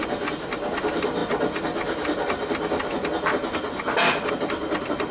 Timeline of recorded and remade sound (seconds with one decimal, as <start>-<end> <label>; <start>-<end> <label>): 0.0-5.1 recorded

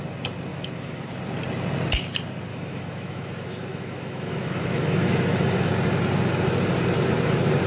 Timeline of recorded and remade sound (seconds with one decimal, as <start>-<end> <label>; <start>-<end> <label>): 0.0-0.5 recorded; 0.5-1.1 remade; 1.1-2.5 recorded; 2.5-5.7 remade; 5.7-7.7 recorded

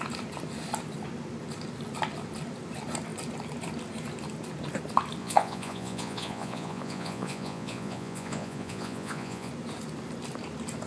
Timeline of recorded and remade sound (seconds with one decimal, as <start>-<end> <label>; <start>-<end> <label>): 0.0-5.2 recorded; 5.2-9.5 remade; 9.5-10.9 recorded